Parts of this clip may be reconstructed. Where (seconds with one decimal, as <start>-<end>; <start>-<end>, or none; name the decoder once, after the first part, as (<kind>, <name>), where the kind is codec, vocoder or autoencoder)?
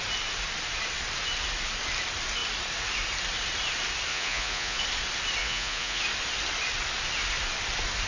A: 4.1-4.8 (vocoder, Vocos); 5.4-6.0